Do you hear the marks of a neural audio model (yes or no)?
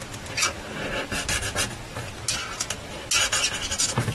no